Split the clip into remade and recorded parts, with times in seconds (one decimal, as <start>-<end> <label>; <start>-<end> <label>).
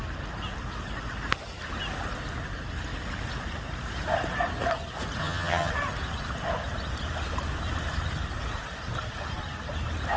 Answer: 0.0-5.2 recorded; 5.2-5.7 remade; 5.7-10.2 recorded